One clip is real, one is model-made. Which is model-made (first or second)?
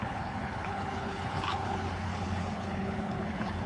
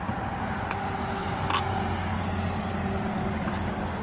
first